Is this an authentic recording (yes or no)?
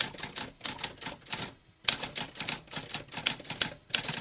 yes